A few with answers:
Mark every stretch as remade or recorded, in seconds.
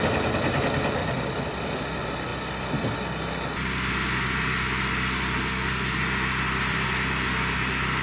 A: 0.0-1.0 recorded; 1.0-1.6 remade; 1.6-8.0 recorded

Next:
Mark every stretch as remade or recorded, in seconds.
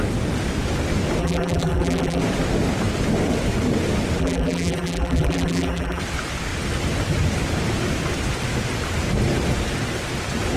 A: 0.0-1.2 recorded; 1.2-2.2 remade; 2.2-4.2 recorded; 4.2-6.0 remade; 6.0-10.6 recorded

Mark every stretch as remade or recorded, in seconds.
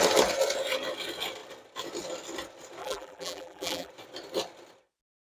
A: 0.0-2.8 recorded; 2.8-3.9 remade; 3.9-5.4 recorded